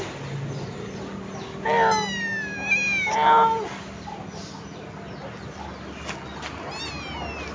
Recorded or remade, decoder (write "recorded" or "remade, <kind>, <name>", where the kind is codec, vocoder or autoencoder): recorded